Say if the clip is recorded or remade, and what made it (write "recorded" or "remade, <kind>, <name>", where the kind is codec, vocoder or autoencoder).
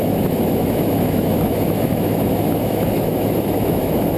remade, autoencoder, DAC-VAE